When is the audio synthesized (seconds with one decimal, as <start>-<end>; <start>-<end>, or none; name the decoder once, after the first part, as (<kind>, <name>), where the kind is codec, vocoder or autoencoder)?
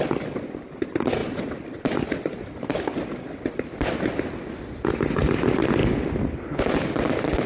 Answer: 0.0-5.8 (vocoder, BigVGAN v2); 6.6-7.5